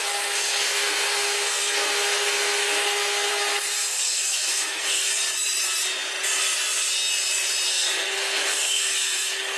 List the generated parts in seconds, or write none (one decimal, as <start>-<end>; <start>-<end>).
0.0-5.1; 7.7-9.6